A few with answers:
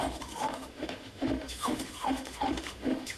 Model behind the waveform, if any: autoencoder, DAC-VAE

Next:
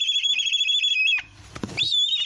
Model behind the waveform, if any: none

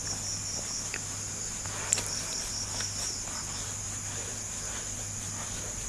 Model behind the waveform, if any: none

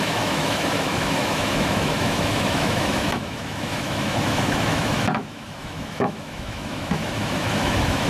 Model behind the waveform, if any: autoencoder, DAC-VAE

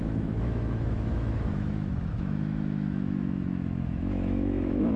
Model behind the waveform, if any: autoencoder, DAC-VAE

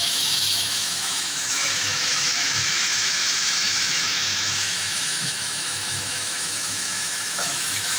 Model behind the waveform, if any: autoencoder, DAC-VAE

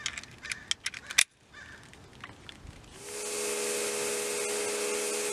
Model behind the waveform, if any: none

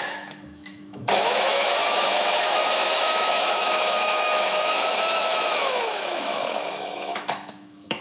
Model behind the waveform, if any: autoencoder, DAC-VAE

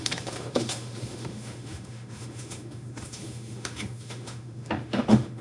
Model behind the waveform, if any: autoencoder, DAC-VAE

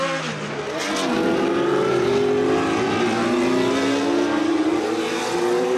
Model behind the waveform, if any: none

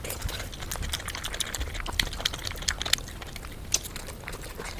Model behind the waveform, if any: none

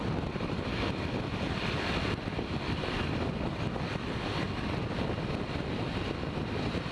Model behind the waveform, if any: none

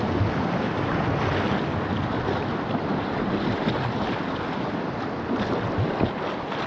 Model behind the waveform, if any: none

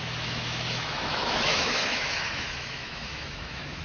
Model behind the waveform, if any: autoencoder, DAC-VAE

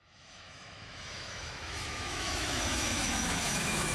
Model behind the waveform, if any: autoencoder, DAC-VAE